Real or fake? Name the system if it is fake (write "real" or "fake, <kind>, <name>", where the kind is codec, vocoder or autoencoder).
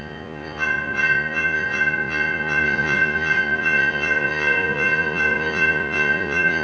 fake, vocoder, Vocos